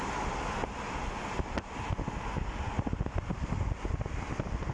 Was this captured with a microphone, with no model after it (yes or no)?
yes